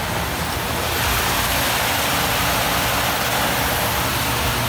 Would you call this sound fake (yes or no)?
no